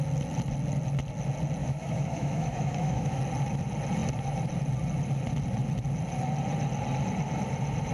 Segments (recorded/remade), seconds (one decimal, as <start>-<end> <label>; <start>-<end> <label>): 0.0-1.6 recorded; 1.6-3.2 remade; 3.2-7.9 recorded